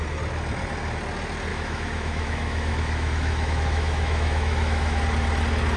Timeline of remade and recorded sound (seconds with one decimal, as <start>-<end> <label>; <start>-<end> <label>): 0.0-1.5 recorded; 1.5-5.0 remade; 5.0-5.8 recorded